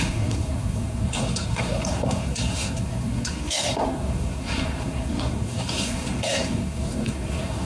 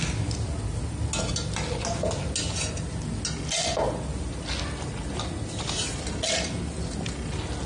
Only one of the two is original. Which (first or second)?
second